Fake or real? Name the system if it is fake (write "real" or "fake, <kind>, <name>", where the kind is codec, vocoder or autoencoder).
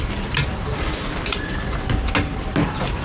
real